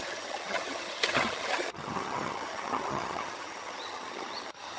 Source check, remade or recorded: remade